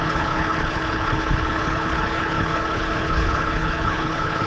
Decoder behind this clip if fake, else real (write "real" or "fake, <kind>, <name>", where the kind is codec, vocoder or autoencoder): fake, codec, HILCodec